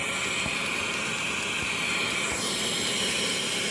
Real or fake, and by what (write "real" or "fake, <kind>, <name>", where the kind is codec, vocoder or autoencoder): real